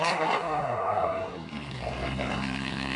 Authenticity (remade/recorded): remade